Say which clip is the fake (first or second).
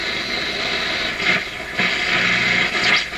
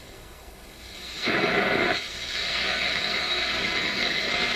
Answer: second